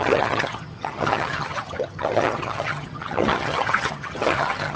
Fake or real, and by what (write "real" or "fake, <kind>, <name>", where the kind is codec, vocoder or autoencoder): fake, vocoder, HiFi-GAN